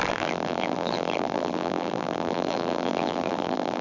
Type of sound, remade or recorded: remade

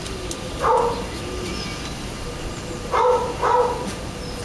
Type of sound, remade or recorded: recorded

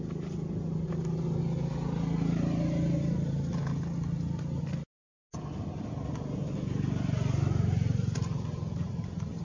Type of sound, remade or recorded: recorded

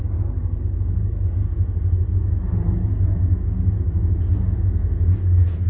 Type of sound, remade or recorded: recorded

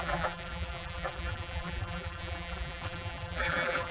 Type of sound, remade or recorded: remade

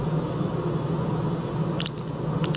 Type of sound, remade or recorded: recorded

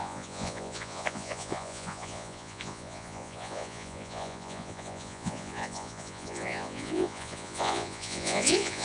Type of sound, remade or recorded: remade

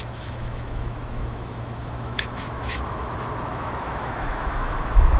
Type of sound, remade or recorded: remade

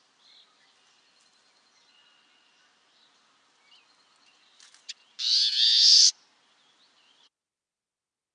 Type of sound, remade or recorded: recorded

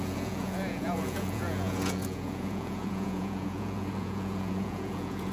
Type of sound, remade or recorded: remade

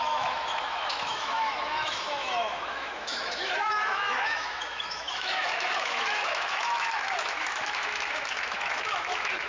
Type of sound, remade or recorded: remade